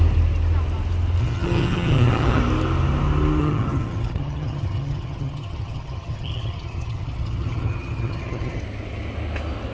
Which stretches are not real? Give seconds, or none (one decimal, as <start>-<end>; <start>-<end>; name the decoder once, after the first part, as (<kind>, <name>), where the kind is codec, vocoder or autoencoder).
1.2-2.4 (vocoder, HiFi-GAN); 3.4-8.6